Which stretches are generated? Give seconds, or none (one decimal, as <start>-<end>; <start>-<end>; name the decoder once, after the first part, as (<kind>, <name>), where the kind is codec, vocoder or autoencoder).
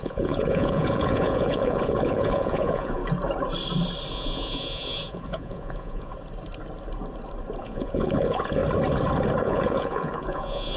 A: 0.0-3.0 (vocoder, Vocos); 4.1-6.1; 7.6-8.6; 9.4-10.8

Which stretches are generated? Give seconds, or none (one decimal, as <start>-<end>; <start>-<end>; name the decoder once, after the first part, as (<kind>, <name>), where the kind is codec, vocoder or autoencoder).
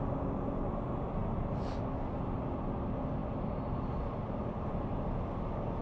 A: none